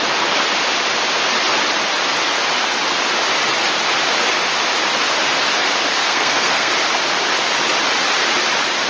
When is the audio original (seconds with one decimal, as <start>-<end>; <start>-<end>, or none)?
0.0-5.9; 6.7-8.9